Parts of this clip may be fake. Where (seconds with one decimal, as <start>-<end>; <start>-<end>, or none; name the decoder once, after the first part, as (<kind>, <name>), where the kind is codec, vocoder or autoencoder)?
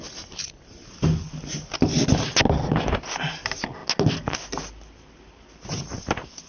none